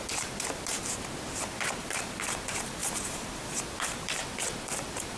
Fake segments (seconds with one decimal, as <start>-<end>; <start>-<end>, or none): 1.4-5.2